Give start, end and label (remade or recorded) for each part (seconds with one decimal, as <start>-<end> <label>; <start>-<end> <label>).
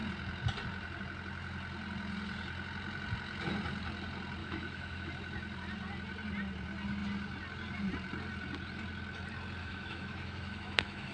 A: 0.0-4.4 recorded; 4.4-5.1 remade; 5.1-9.6 recorded; 9.6-11.1 remade